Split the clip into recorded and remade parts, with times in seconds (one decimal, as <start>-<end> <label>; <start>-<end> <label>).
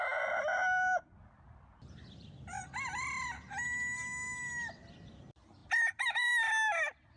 0.0-7.2 recorded